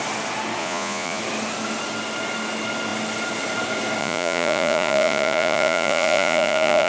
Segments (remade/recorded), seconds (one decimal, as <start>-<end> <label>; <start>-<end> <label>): 0.0-0.6 recorded; 0.6-1.2 remade; 1.2-4.0 recorded; 4.0-6.9 remade